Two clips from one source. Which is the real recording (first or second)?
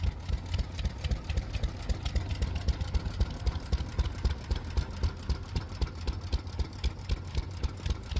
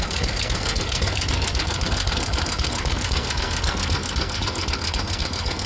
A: first